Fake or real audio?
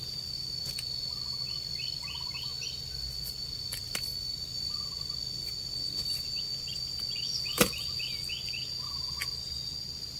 real